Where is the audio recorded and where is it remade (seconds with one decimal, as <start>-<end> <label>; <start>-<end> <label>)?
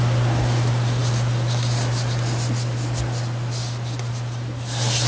0.0-5.1 recorded